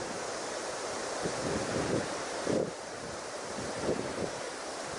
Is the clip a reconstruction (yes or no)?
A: yes